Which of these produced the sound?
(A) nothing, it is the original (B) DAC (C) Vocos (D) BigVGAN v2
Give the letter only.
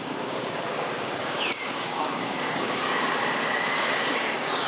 B